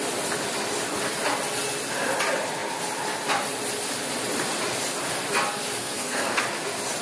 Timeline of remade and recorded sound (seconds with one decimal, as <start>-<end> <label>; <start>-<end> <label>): 0.0-5.8 recorded; 5.8-6.4 remade; 6.4-7.0 recorded